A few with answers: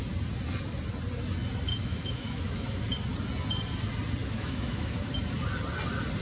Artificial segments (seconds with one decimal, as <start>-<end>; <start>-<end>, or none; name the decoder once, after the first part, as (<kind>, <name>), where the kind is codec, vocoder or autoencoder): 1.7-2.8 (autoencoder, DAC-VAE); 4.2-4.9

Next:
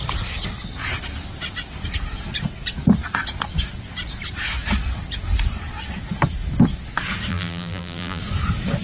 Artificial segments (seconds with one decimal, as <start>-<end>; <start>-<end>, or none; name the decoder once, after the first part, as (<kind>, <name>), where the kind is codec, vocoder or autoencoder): 7.3-8.2 (vocoder, BigVGAN v2)

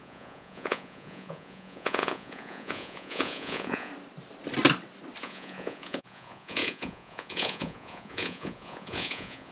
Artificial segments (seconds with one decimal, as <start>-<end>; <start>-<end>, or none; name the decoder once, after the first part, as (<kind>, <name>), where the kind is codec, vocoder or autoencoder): 0.0-3.9 (vocoder, Vocos); 5.2-9.5